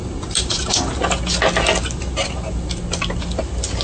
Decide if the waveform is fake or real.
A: real